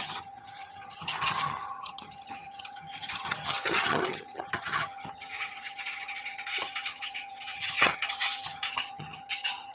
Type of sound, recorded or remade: remade